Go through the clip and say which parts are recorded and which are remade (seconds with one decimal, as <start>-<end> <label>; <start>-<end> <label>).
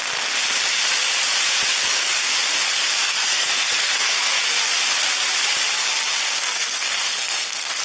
0.0-1.8 recorded; 1.8-2.3 remade; 2.3-3.0 recorded; 3.0-4.4 remade; 4.4-6.4 recorded; 6.4-7.8 remade